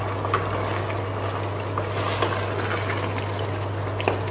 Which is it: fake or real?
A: real